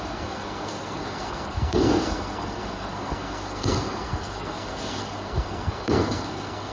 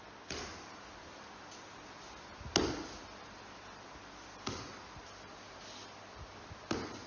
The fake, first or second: first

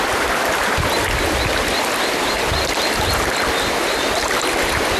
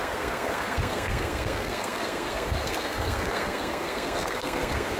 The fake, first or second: second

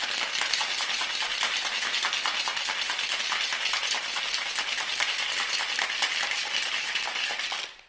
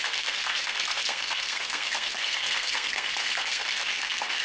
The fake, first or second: second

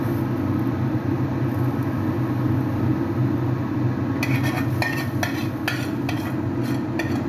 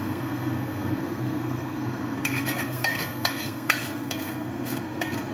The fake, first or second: second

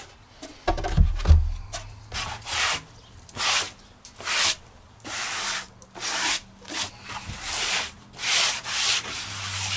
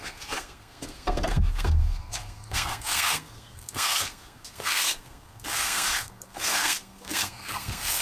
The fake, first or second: second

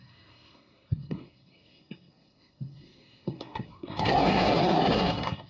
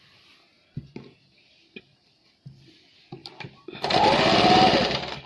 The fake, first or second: first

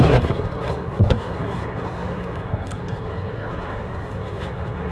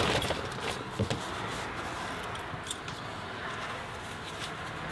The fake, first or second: first